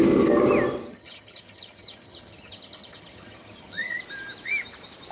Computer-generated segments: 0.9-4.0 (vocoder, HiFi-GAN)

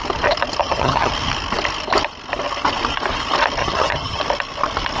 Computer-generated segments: 0.6-1.1 (vocoder, HiFi-GAN); 3.6-4.2

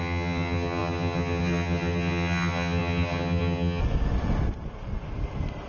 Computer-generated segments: 0.0-3.8 (vocoder, HiFi-GAN)

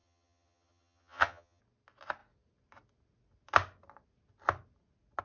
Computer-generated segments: 0.0-1.6 (vocoder, HiFi-GAN)

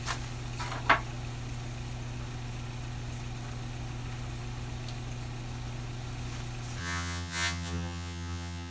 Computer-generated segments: 6.8-8.7 (vocoder, HiFi-GAN)

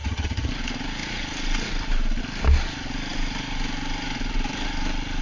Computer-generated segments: 0.0-0.5 (vocoder, HiFi-GAN)